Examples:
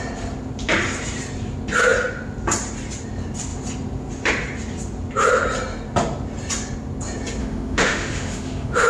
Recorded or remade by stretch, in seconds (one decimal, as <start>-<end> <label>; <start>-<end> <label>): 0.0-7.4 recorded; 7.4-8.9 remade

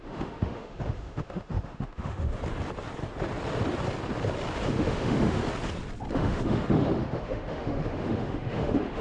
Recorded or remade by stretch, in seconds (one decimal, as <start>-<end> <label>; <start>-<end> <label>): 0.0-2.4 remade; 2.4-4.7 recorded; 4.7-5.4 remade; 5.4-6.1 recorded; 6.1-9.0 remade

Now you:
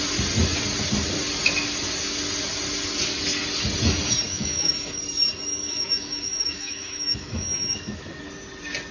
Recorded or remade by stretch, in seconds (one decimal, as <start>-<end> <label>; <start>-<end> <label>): 0.0-4.3 recorded; 4.3-5.0 remade; 5.0-5.5 recorded; 5.5-8.2 remade; 8.2-8.9 recorded